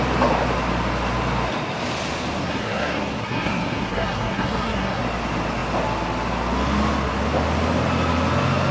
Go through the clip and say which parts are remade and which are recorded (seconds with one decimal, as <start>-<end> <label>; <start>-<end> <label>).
0.0-2.4 recorded; 2.4-5.0 remade; 5.0-8.7 recorded